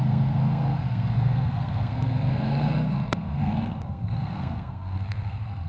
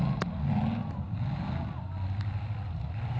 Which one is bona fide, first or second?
second